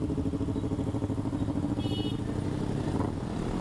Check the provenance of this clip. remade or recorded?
recorded